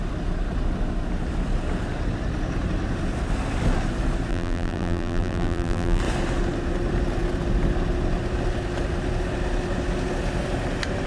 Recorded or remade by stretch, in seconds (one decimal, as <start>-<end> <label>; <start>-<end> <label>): 0.0-4.3 recorded; 4.3-6.0 remade; 6.0-11.1 recorded

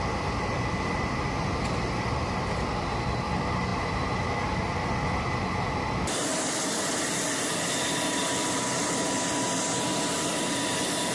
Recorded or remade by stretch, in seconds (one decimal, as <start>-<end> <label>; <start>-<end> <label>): 0.0-11.1 recorded

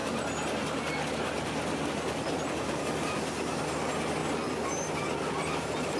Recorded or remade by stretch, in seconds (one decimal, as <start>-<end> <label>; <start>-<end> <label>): 0.0-6.0 recorded